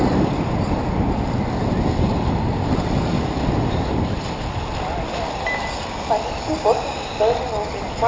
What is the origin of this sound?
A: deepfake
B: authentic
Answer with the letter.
B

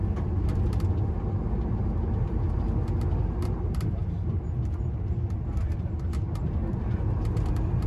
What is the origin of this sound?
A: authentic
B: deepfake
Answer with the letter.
A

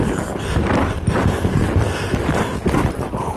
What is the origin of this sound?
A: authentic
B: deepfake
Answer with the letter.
A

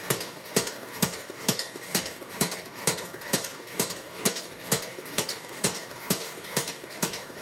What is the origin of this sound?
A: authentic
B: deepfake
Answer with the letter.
B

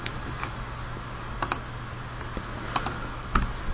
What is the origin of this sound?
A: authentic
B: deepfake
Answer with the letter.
A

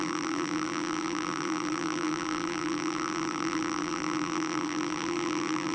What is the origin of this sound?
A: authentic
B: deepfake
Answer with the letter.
B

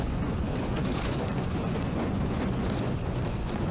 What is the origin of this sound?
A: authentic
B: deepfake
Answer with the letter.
B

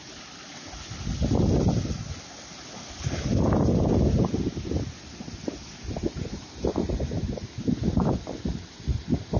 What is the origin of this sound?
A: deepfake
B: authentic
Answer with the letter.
B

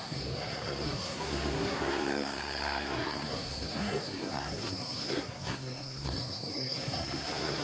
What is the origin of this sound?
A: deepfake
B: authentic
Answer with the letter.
A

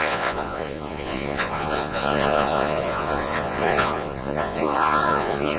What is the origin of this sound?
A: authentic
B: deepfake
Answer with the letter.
B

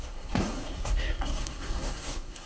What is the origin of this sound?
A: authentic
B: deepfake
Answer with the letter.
B